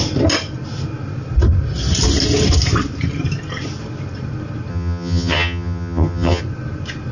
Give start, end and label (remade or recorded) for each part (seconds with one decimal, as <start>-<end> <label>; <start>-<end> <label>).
0.0-4.7 recorded; 4.7-6.4 remade; 6.4-7.1 recorded